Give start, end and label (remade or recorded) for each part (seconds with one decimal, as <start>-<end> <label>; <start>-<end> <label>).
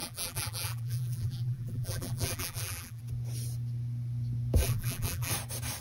0.0-3.0 remade; 3.0-4.6 recorded; 4.6-5.3 remade; 5.3-5.8 recorded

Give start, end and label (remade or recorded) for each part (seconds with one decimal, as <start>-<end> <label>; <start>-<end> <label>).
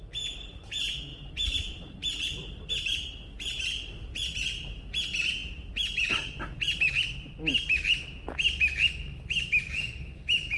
0.0-10.6 recorded